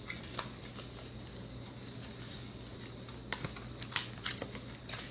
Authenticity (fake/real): real